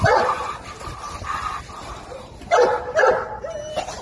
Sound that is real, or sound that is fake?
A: real